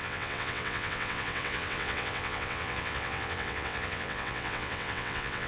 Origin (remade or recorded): remade